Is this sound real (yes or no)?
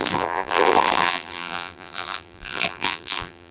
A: no